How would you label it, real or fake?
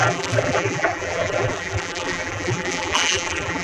fake